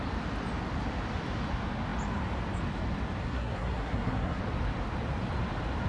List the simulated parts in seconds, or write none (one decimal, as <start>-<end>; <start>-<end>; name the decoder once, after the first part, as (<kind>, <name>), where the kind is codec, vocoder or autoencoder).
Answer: 3.2-4.4 (codec, SNAC)

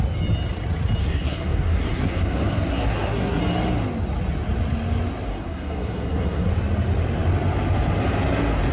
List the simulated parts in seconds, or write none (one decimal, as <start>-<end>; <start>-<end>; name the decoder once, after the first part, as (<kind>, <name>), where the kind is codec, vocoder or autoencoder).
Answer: 1.0-3.4 (codec, SNAC); 5.3-6.5

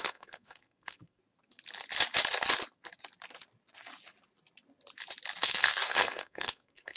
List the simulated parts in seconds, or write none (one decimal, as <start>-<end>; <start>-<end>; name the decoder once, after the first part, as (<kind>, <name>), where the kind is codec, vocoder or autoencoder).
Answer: 0.0-1.2 (codec, SNAC); 5.4-7.0